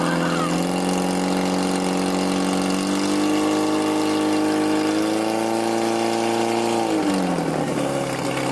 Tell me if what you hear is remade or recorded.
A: recorded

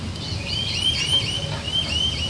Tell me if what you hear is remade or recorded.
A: recorded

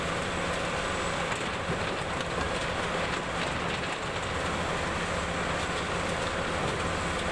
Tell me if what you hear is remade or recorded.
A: recorded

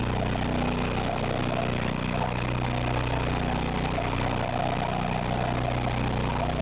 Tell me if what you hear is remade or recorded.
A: recorded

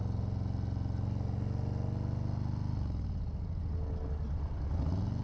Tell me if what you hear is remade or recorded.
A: recorded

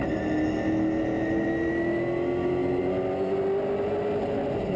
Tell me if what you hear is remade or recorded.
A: recorded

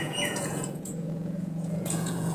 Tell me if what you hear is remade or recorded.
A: remade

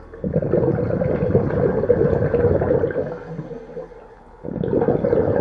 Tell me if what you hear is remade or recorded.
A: recorded